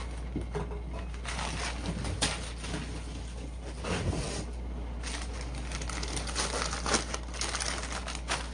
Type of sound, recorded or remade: recorded